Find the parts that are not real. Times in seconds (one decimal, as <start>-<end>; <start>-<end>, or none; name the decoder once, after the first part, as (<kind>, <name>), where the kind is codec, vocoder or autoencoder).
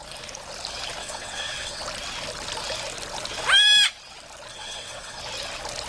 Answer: 1.0-1.8 (vocoder, WaveNeXt); 4.5-5.2